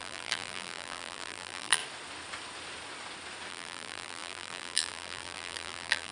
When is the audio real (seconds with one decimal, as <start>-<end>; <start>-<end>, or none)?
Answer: 1.8-3.5